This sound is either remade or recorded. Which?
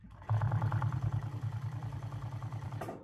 remade